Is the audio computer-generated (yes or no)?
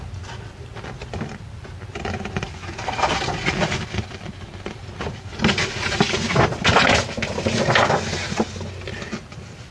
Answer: no